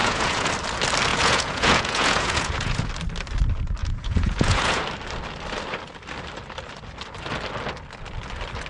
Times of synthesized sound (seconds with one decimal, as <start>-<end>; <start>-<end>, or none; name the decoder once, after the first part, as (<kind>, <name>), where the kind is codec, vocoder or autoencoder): 0.0-0.5 (vocoder, Vocos); 1.1-2.9; 3.8-4.8